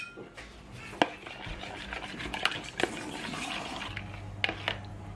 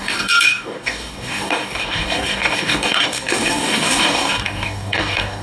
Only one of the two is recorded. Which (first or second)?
first